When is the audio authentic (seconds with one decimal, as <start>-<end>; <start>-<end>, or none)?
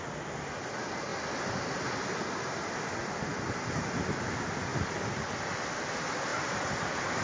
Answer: 0.0-1.1; 2.2-6.3